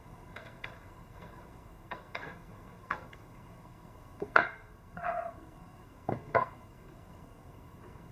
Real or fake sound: fake